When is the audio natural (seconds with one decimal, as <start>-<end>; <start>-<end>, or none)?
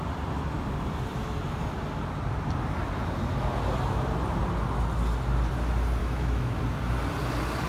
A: 0.0-6.0; 6.6-7.7